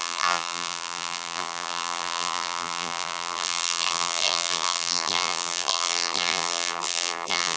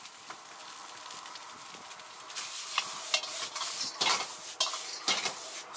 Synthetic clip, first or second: first